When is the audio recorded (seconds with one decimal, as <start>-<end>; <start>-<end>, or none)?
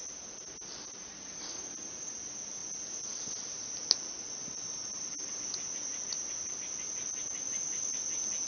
0.0-8.5